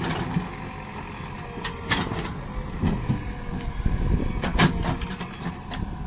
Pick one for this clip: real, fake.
real